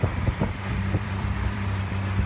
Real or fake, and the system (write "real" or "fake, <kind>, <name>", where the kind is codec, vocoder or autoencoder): fake, vocoder, BigVGAN v2